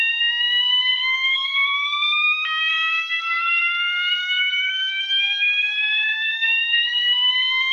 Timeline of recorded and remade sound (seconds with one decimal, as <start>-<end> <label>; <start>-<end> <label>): 0.0-0.9 recorded; 0.9-1.9 remade; 1.9-2.7 recorded; 2.7-7.3 remade; 7.3-7.7 recorded